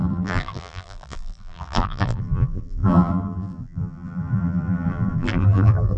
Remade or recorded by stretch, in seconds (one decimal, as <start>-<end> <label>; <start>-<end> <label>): 0.0-6.0 remade